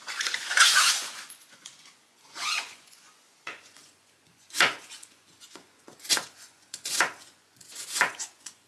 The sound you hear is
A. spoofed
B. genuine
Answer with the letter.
A